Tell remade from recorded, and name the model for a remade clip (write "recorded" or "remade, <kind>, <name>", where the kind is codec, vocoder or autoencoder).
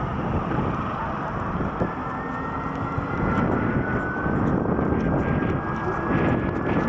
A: recorded